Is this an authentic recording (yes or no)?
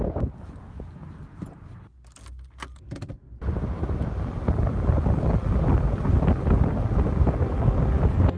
yes